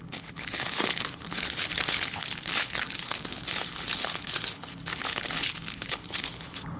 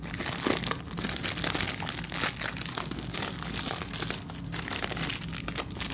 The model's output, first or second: first